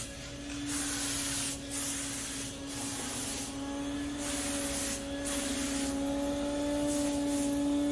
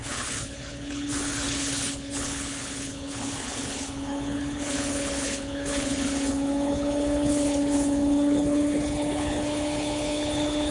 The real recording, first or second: first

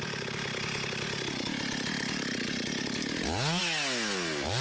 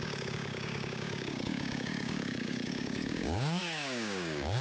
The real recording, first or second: first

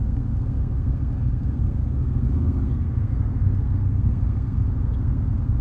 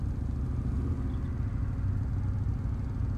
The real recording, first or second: second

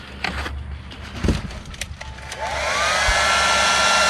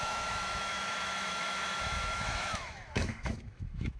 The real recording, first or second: first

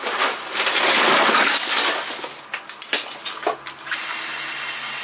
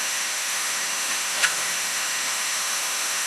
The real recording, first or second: first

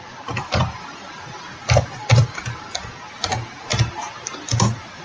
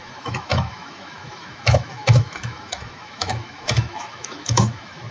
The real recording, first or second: first